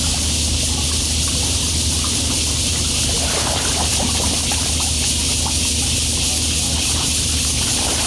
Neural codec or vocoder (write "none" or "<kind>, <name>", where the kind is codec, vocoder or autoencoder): none